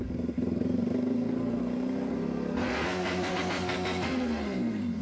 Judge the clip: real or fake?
fake